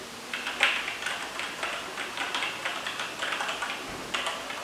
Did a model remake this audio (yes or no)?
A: no